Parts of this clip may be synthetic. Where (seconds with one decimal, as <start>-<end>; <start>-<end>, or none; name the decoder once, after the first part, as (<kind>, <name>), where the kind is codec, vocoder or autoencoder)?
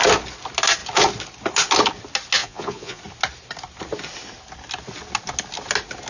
2.4-3.0 (vocoder, Vocos)